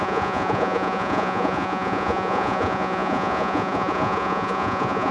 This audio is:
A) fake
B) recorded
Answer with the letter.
A